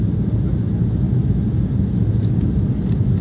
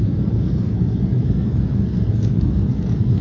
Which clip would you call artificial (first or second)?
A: second